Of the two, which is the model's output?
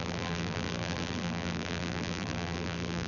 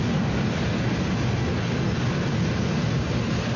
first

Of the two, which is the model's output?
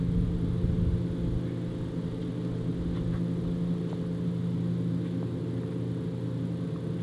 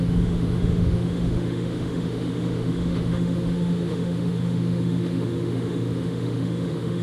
second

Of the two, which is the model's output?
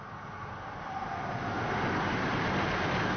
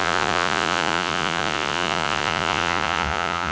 second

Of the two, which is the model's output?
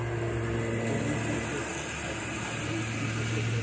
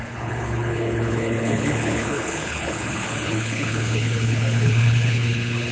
second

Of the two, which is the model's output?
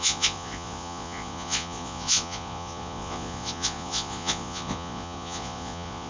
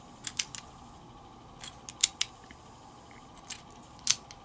first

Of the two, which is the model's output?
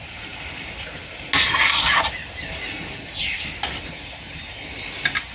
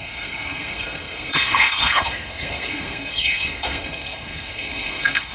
second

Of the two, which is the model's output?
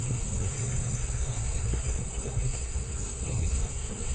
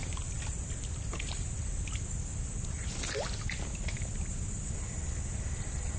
first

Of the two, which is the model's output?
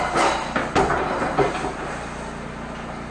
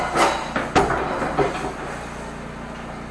first